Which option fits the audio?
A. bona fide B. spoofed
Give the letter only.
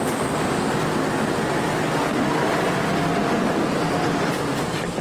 A